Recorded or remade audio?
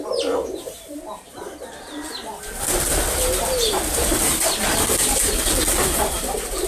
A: recorded